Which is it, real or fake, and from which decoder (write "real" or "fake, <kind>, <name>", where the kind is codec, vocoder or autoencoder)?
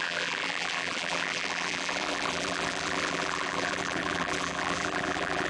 fake, vocoder, BigVGAN v2